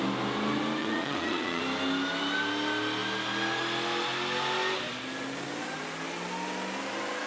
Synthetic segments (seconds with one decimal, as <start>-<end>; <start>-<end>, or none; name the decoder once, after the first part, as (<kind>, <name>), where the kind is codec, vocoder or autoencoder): 0.8-1.6 (vocoder, Vocos)